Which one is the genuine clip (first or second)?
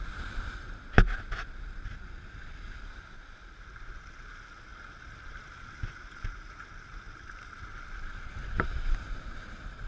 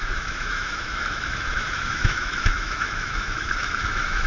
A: first